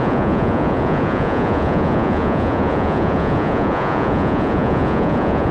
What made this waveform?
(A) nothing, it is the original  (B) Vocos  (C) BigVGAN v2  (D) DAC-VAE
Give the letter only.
B